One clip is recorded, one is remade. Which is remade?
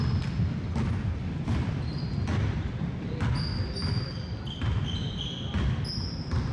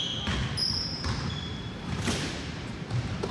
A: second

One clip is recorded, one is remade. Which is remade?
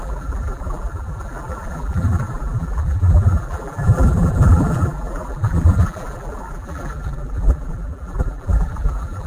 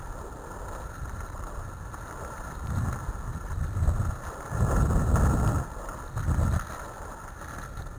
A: first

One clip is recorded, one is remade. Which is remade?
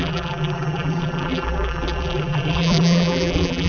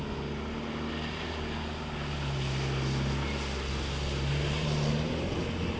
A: first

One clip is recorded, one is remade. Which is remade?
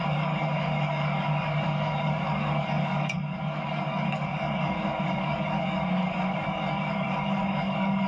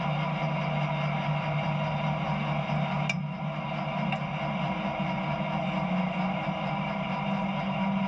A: first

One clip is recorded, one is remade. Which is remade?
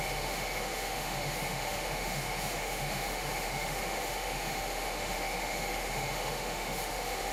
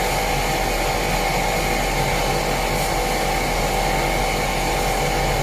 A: first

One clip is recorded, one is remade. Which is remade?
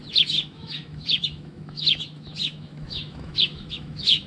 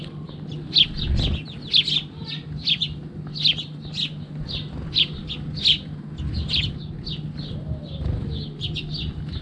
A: first